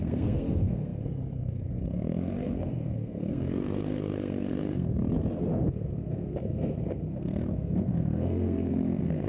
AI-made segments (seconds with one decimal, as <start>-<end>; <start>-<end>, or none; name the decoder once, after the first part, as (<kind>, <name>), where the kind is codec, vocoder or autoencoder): 0.0-5.0 (codec, SNAC); 5.7-9.3